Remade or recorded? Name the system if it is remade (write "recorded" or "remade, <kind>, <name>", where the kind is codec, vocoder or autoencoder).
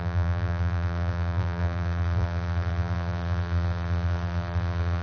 remade, vocoder, BigVGAN v2